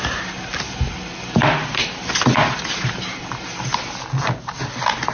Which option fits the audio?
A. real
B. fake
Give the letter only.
A